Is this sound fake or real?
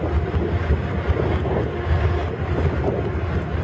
real